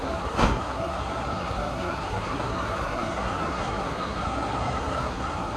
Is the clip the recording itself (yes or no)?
no